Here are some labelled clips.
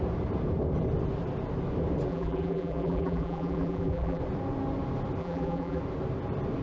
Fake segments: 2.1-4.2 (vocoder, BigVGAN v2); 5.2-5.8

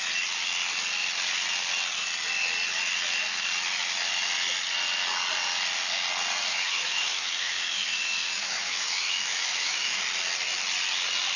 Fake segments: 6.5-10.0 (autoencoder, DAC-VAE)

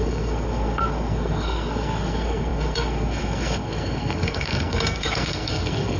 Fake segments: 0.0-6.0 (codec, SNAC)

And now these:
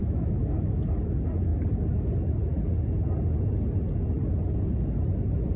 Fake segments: 0.0-0.8 (autoencoder, DAC-VAE)

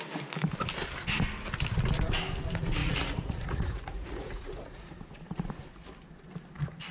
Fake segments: 2.8-5.5 (vocoder, Vocos)

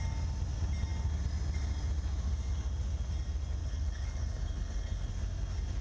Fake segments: 3.6-5.1 (codec, HILCodec)